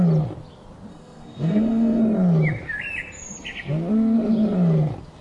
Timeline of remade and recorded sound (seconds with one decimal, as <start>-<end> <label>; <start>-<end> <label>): 0.0-0.9 recorded; 0.9-2.0 remade; 2.0-5.2 recorded